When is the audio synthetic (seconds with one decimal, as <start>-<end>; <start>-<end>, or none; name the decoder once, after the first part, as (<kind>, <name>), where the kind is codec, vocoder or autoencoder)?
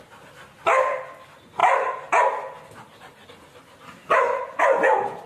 none